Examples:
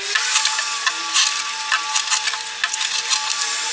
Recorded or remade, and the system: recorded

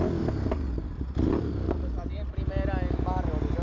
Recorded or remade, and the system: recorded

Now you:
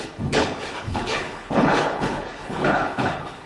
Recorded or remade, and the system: remade, codec, HILCodec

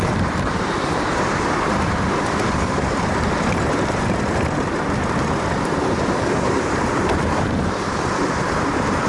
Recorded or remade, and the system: remade, vocoder, BigVGAN v2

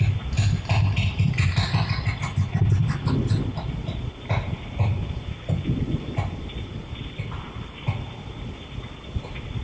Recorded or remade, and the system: recorded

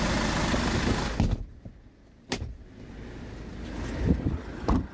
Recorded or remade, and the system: recorded